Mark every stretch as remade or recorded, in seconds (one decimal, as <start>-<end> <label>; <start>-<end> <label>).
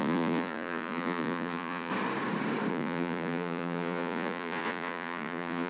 0.0-1.9 remade; 1.9-2.7 recorded; 2.7-5.7 remade